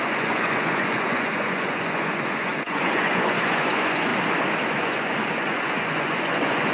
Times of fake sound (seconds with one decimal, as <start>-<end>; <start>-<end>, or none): 0.0-4.1; 4.7-6.7